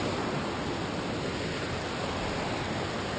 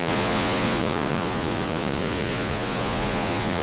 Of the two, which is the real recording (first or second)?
first